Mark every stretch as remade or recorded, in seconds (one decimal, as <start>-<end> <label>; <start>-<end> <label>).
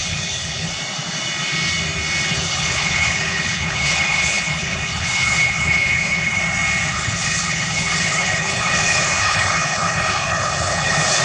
0.0-0.7 remade; 0.7-2.3 recorded; 2.3-6.4 remade; 6.4-6.9 recorded; 6.9-11.2 remade